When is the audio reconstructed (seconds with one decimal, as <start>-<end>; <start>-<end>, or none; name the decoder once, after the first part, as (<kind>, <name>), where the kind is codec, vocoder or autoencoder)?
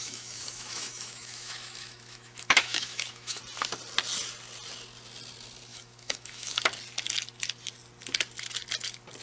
0.0-3.4 (autoencoder, DAC-VAE); 5.7-6.6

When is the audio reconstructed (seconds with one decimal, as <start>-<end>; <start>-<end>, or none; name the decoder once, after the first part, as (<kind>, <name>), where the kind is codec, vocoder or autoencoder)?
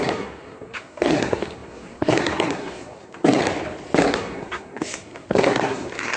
0.0-3.4 (codec, SNAC); 4.0-6.2